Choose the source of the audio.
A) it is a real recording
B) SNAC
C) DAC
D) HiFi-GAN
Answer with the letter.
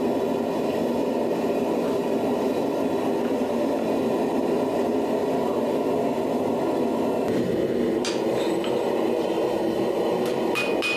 A